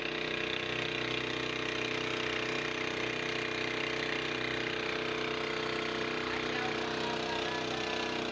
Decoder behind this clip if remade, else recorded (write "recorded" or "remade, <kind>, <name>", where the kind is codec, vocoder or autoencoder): recorded